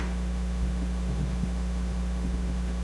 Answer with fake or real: fake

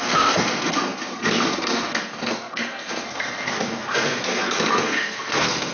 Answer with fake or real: fake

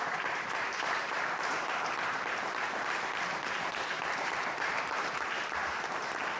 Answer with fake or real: fake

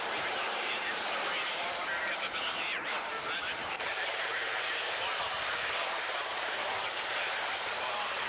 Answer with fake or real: fake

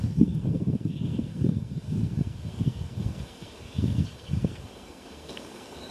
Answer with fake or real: fake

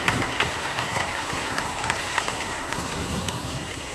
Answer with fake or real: fake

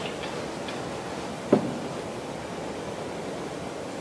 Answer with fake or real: real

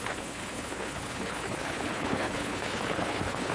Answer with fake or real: fake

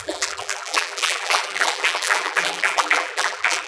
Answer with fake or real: fake